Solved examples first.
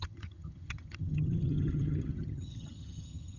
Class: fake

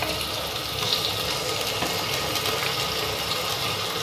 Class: real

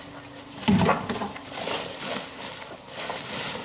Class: real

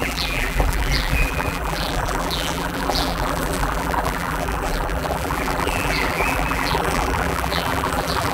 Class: fake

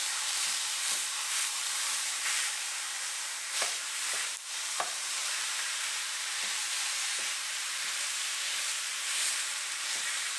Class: fake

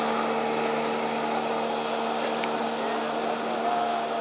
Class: real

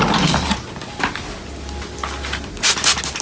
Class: real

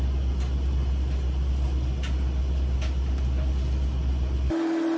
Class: real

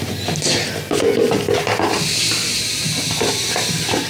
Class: real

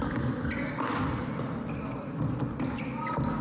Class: real